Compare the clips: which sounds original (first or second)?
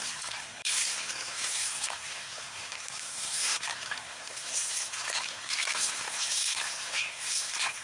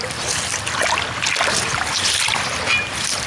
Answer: second